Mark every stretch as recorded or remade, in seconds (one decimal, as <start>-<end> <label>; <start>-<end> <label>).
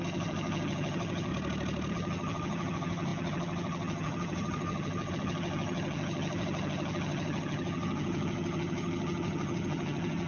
0.0-1.3 remade; 1.3-1.9 recorded; 1.9-10.3 remade